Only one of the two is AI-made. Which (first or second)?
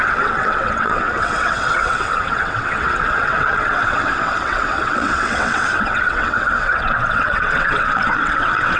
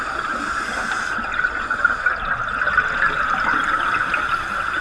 first